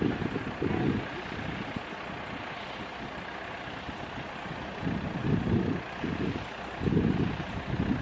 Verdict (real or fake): real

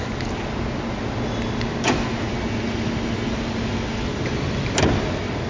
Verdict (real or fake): real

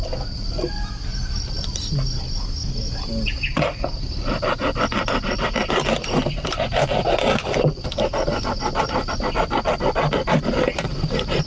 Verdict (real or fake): real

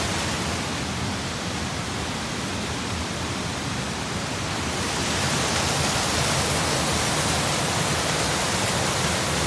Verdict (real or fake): real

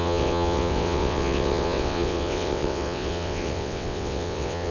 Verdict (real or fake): fake